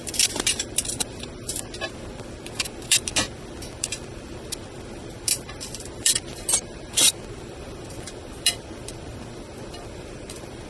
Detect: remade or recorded remade